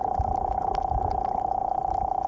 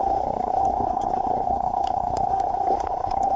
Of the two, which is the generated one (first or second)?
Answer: second